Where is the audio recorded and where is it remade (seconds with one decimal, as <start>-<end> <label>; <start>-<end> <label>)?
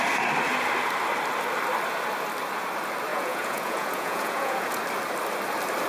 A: 0.0-3.1 recorded; 3.1-4.8 remade; 4.8-5.9 recorded